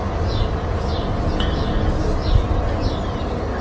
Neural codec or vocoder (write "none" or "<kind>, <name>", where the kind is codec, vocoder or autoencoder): none